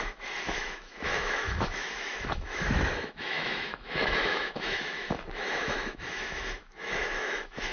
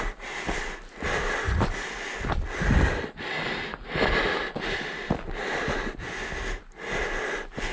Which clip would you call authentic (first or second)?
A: second